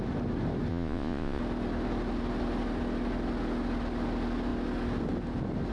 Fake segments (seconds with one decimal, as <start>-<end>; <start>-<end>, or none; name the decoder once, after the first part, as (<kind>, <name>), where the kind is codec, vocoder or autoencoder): 0.7-1.4 (vocoder, Vocos)

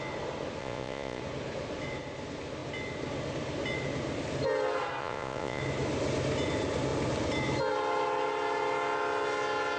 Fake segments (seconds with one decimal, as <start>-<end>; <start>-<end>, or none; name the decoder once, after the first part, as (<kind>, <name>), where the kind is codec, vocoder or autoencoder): 0.6-1.2 (vocoder, Vocos); 5.0-5.6

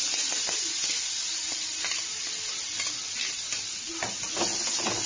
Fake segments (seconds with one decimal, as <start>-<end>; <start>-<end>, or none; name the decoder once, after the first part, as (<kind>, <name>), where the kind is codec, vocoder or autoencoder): none

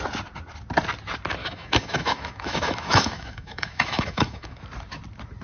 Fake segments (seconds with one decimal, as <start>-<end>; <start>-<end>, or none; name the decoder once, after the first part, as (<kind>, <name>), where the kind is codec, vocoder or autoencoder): 1.4-4.6 (autoencoder, DAC-VAE)